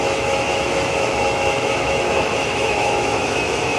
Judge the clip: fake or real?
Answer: fake